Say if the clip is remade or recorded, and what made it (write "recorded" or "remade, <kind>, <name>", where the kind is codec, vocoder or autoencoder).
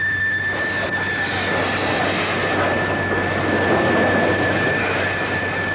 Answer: recorded